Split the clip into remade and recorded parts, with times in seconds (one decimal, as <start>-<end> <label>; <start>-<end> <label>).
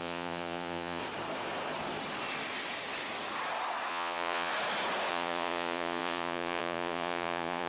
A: 0.0-1.0 remade; 1.0-3.9 recorded; 3.9-4.5 remade; 4.5-5.1 recorded; 5.1-7.7 remade